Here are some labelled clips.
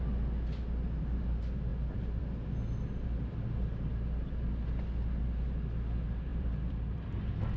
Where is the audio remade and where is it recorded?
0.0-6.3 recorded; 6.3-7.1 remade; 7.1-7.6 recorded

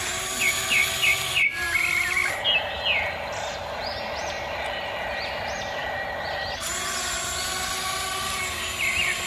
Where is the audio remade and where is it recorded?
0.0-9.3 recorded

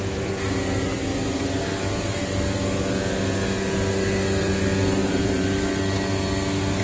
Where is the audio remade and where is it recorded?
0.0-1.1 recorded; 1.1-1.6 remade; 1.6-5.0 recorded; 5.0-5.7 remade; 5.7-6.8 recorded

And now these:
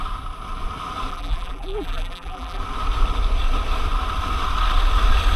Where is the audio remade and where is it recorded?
0.0-1.1 recorded; 1.1-2.6 remade; 2.6-5.4 recorded

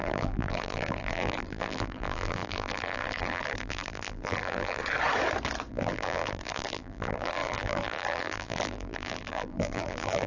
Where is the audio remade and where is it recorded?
0.0-4.8 remade; 4.8-5.7 recorded; 5.7-10.3 remade

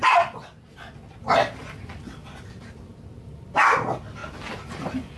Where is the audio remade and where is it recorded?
0.0-5.2 recorded

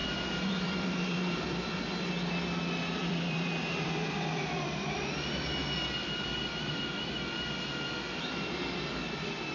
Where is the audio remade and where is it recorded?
0.0-2.1 remade; 2.1-3.0 recorded; 3.0-5.0 remade; 5.0-5.6 recorded; 5.6-6.8 remade; 6.8-9.5 recorded